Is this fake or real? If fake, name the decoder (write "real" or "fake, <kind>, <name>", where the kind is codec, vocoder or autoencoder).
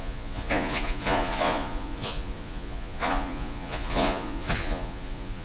fake, vocoder, Vocos